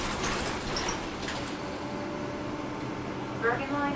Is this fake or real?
real